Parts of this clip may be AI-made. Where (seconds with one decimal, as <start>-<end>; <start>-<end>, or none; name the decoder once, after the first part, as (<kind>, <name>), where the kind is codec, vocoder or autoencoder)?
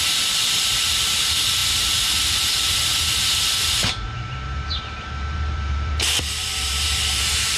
0.0-7.6 (vocoder, BigVGAN v2)